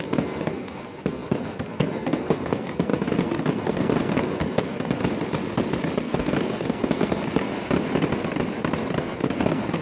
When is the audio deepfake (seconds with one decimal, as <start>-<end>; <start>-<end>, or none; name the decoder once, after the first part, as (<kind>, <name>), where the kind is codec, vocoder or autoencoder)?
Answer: 0.0-5.0 (codec, SNAC); 6.0-7.5; 9.0-9.8